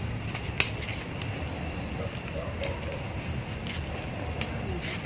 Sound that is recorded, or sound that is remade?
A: recorded